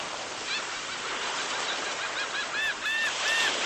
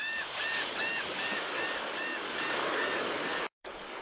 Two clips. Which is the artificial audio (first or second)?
second